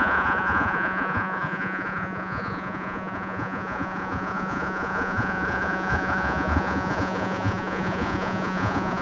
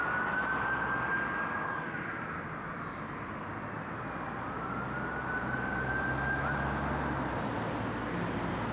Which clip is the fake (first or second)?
first